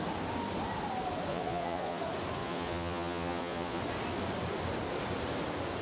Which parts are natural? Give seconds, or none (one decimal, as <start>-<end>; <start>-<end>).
0.0-1.3; 2.0-2.4; 3.8-5.8